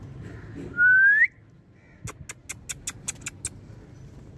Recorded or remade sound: recorded